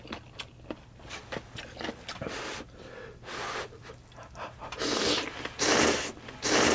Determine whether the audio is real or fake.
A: real